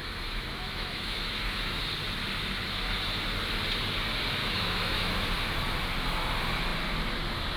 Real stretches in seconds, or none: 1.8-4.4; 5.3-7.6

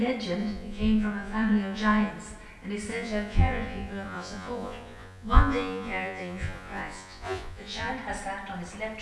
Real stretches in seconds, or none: 0.0-0.4; 2.1-2.9; 7.9-9.0

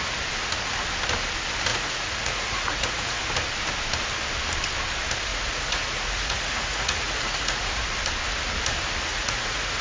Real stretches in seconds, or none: 0.0-1.7; 3.2-5.3; 7.8-9.1

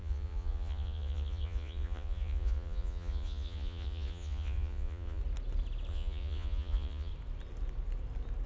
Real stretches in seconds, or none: 5.2-5.9; 7.1-8.5

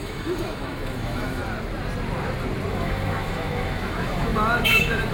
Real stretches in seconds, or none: 1.4-2.7

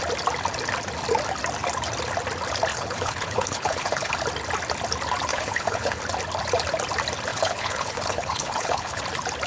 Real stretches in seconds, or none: 0.0-2.7; 4.1-5.3; 6.0-7.3; 9.0-9.5

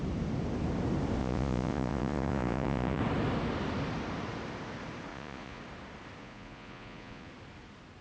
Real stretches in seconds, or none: 0.0-1.2; 3.0-5.1; 5.6-6.2; 7.3-8.0

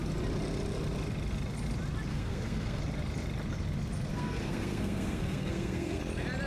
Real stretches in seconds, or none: 0.0-2.1; 2.8-4.1; 6.0-6.5